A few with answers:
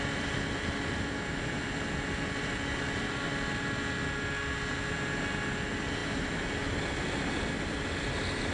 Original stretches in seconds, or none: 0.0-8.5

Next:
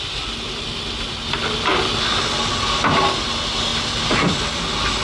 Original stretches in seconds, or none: 0.0-5.0

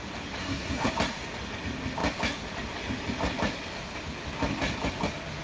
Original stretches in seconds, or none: 0.0-0.4; 0.9-5.4

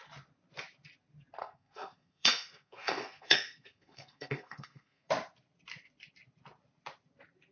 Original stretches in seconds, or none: 0.0-1.4; 5.1-7.5